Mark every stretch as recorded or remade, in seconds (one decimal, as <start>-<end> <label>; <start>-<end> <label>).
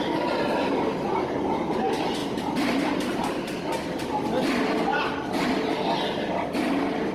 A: 0.0-7.1 recorded